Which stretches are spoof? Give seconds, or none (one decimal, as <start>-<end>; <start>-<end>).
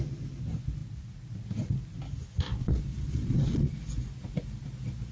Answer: 2.6-5.1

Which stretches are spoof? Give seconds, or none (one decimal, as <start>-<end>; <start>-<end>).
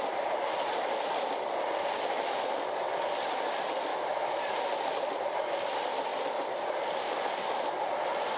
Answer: 3.9-4.4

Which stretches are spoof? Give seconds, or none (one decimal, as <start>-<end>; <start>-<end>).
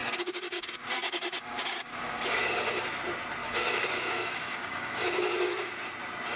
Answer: 0.0-2.9; 3.4-5.7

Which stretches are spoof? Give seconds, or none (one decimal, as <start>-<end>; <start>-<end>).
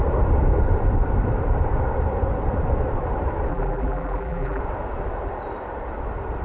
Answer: 3.5-4.6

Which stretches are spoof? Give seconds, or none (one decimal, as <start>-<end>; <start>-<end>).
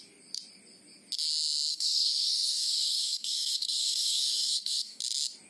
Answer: 1.7-5.0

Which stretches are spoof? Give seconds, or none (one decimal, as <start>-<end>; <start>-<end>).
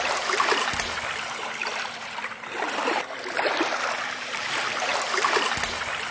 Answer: none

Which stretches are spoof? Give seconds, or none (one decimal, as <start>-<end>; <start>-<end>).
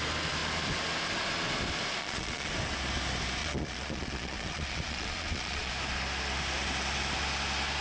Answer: 2.0-2.5; 3.4-5.7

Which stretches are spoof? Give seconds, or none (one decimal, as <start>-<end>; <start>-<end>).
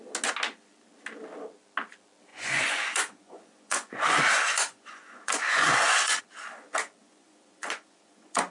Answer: 2.3-6.2; 7.0-8.5